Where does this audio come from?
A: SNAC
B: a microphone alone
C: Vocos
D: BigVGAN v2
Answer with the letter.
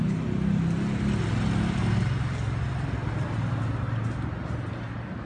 B